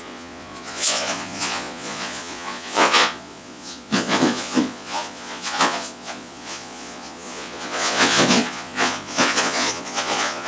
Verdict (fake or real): fake